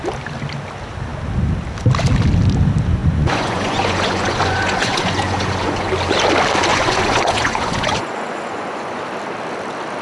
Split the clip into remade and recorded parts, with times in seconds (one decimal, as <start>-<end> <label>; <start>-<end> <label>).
0.0-3.0 recorded; 3.0-5.9 remade; 5.9-6.7 recorded; 6.7-9.0 remade; 9.0-10.0 recorded